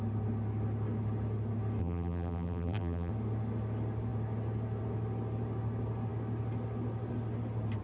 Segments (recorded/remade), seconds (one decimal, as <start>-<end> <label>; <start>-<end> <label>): 0.0-1.8 recorded; 1.8-3.1 remade; 3.1-7.8 recorded